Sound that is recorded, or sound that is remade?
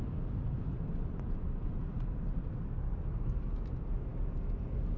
recorded